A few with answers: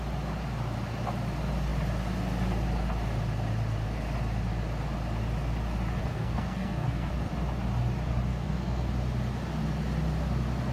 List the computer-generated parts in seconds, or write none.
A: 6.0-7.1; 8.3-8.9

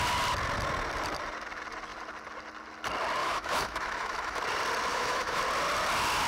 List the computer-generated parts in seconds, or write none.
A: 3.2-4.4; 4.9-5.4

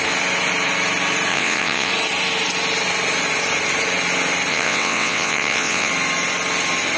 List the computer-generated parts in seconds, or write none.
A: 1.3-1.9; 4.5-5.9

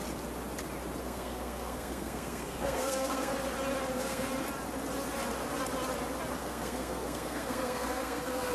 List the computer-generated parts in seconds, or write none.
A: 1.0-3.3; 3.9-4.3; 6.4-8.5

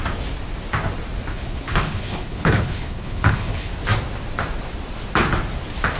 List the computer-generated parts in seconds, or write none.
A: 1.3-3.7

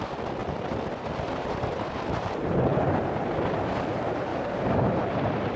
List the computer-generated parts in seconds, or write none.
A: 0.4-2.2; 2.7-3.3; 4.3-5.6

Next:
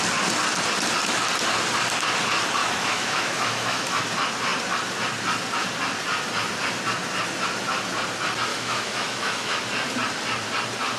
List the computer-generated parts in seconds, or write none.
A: 2.6-4.0; 8.5-9.6

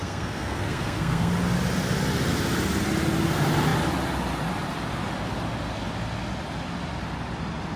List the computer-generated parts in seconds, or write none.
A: 0.0-1.3